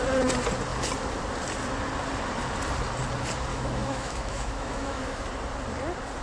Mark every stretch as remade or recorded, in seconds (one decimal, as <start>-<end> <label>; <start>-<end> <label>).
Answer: 0.0-3.5 recorded; 3.5-5.2 remade; 5.2-6.2 recorded